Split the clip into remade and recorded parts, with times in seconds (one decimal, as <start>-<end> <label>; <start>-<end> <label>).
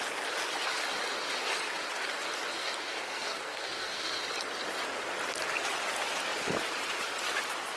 0.0-2.6 recorded; 2.6-4.2 remade; 4.2-7.8 recorded